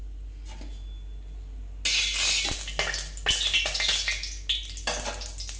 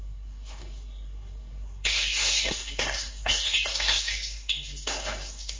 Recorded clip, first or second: first